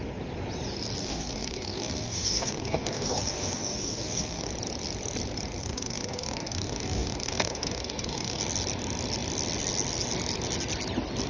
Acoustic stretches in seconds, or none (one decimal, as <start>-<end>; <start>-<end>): 0.0-1.0; 4.5-5.6; 8.4-11.3